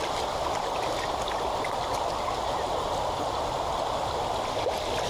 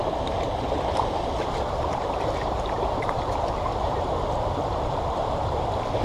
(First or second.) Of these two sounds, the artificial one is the second